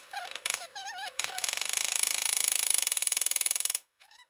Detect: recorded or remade remade